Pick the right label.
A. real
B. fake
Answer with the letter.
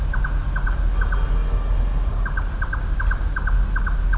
A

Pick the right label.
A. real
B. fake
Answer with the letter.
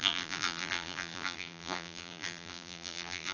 B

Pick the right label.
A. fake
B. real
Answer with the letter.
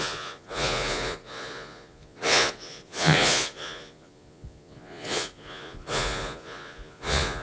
A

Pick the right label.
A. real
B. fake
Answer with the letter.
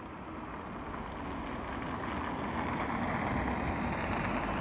A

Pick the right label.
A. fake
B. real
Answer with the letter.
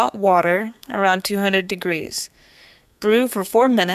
A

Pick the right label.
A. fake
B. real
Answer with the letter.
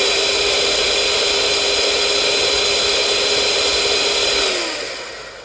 B